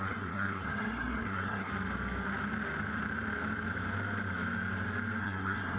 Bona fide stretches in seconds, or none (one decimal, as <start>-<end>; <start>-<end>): 1.7-5.2